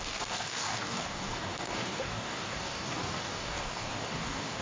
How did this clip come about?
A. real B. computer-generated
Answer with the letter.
B